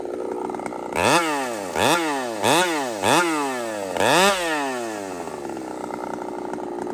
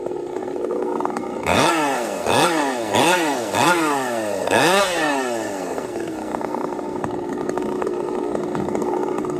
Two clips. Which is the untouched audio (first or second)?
first